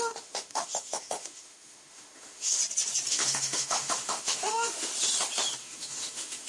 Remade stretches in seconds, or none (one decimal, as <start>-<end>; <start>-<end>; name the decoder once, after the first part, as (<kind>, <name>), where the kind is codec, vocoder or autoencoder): 0.0-2.6 (autoencoder, DAC-VAE); 3.1-4.9; 5.6-6.5